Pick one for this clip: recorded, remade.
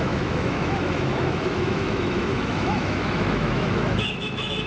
remade